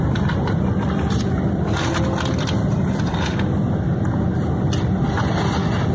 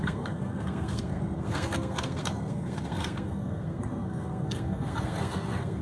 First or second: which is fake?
second